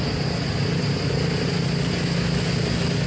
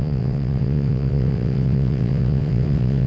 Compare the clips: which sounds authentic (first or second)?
first